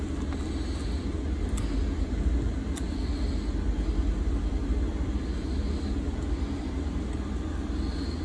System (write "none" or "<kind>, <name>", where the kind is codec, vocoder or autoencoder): none